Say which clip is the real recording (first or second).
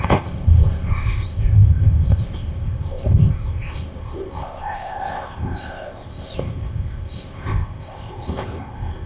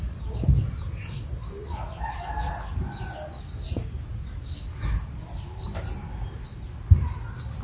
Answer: second